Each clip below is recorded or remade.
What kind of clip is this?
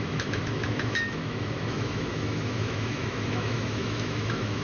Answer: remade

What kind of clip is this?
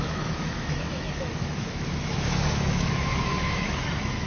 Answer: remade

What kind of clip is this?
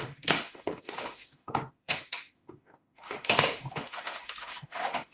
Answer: remade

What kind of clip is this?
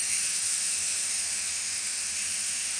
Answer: remade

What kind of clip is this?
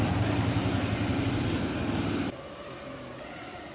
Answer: recorded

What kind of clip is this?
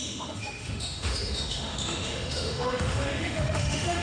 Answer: remade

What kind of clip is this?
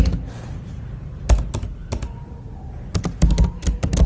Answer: recorded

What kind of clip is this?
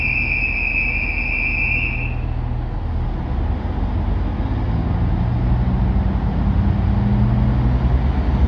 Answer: recorded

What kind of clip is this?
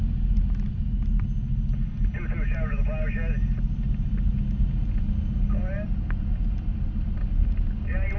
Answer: recorded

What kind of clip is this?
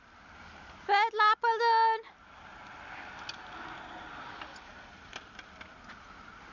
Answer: recorded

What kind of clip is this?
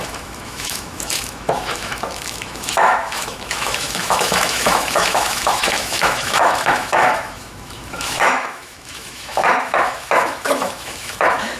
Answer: remade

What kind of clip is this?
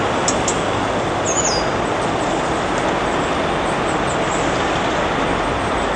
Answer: recorded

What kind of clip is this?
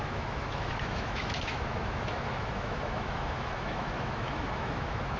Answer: remade